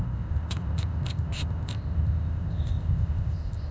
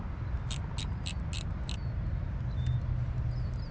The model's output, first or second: first